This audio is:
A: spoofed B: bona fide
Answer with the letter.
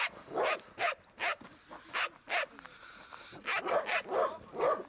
B